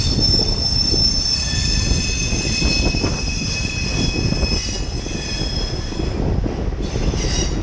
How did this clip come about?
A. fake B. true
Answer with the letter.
B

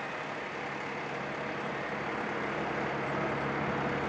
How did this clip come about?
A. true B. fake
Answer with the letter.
A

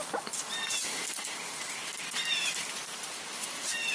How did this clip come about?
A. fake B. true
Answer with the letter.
B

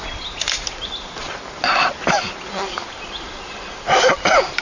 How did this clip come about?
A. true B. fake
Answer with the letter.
A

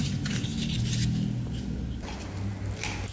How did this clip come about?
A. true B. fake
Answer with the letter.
A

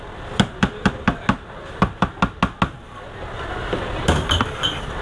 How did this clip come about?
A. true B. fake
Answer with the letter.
A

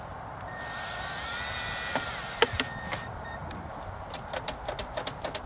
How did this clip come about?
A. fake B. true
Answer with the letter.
B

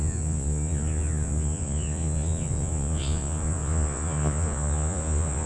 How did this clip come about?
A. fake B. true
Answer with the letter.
A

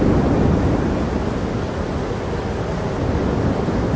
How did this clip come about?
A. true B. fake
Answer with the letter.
A